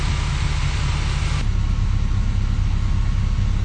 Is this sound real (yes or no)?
yes